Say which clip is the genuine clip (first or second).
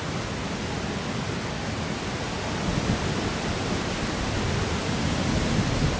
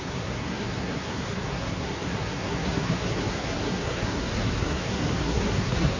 first